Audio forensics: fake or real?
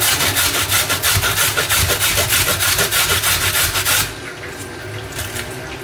real